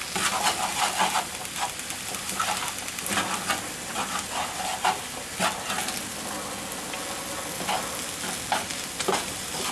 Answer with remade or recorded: recorded